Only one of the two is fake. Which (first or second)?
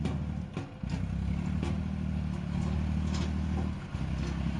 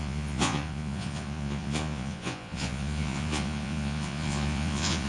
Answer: second